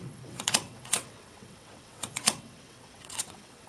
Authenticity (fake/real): fake